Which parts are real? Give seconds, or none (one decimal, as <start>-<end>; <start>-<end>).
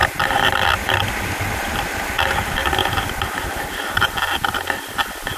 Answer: 0.0-5.4